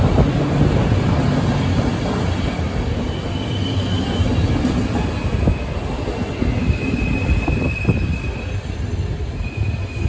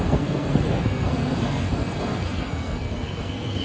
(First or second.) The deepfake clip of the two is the second